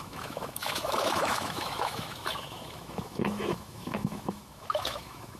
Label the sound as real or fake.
fake